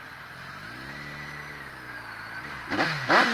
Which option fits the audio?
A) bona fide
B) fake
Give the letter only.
A